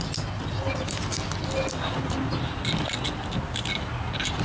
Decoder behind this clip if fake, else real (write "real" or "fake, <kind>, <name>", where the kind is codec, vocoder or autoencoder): real